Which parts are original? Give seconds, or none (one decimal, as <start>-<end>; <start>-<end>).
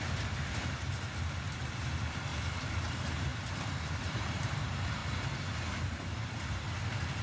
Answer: 5.0-6.0